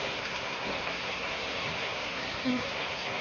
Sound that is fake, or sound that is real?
fake